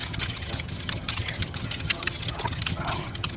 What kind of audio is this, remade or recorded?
remade